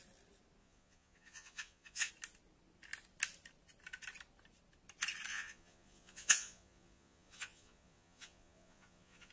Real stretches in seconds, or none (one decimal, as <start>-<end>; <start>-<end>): 0.0-0.6; 2.1-5.3